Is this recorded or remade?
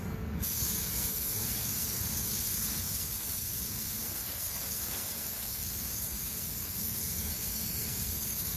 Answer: remade